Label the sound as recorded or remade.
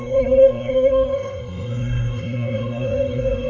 remade